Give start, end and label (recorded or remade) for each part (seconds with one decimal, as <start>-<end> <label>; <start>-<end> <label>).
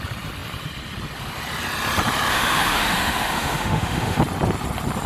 0.0-2.3 recorded; 2.3-4.2 remade; 4.2-5.1 recorded